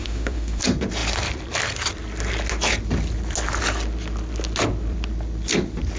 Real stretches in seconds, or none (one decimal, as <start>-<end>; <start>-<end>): 0.6-6.0